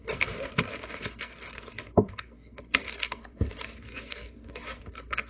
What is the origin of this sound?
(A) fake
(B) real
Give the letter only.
A